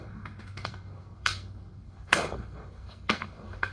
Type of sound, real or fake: fake